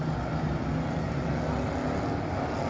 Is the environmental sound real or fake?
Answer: real